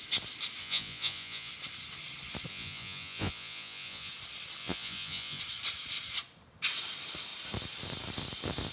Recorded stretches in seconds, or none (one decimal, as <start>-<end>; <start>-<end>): 0.0-0.6; 1.5-2.5; 4.1-4.6; 5.4-8.7